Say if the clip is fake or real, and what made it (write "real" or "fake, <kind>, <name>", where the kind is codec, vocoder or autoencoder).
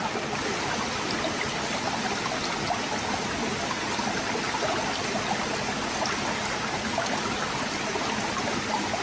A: real